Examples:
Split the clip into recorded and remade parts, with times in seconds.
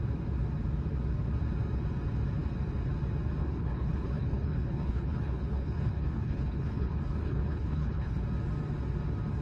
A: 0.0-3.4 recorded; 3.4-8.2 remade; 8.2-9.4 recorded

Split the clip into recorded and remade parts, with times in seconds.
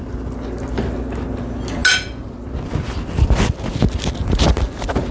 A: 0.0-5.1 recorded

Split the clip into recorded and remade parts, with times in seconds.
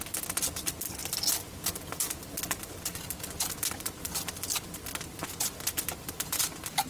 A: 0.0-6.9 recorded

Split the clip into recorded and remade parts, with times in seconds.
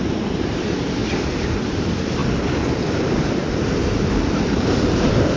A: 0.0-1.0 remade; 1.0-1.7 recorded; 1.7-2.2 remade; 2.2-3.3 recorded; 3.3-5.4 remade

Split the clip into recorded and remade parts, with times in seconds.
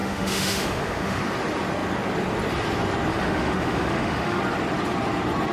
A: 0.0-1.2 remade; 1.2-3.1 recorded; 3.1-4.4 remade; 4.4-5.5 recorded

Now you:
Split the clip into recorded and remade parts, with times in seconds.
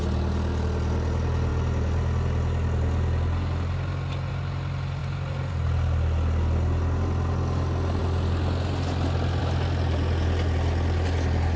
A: 0.0-11.6 recorded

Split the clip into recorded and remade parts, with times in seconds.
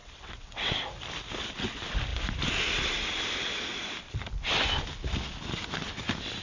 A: 0.0-0.9 remade; 0.9-6.4 recorded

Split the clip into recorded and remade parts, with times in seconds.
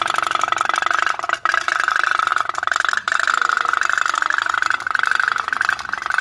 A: 0.0-2.3 recorded; 2.3-3.3 remade; 3.3-6.2 recorded